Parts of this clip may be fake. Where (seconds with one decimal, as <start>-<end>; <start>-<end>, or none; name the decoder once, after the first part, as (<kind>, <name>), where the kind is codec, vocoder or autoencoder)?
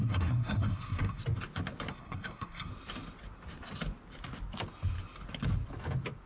0.0-1.2 (codec, SNAC); 1.9-2.7